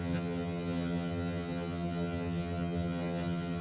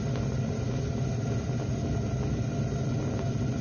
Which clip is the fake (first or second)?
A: first